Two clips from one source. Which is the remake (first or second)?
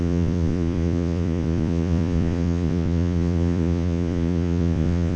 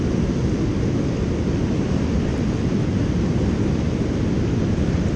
first